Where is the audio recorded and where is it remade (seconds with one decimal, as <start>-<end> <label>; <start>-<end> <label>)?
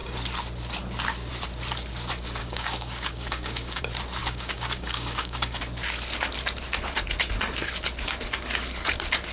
0.0-2.4 recorded; 2.4-3.8 remade; 3.8-4.2 recorded; 4.2-5.6 remade; 5.6-9.3 recorded